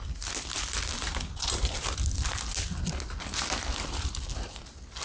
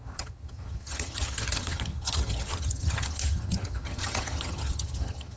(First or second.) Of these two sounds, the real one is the first